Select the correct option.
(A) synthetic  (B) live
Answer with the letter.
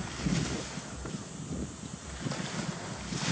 B